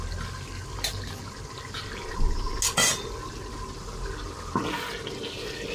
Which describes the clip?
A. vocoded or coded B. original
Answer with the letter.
B